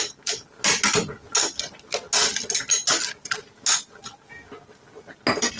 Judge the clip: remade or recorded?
recorded